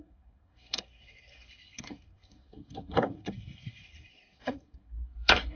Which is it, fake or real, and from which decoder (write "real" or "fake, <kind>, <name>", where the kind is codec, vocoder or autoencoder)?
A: fake, codec, SNAC